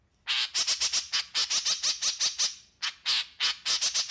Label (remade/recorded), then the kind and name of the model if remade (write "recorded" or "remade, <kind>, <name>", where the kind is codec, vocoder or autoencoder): recorded